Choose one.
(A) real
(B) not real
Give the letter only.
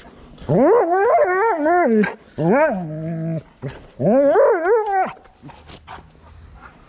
A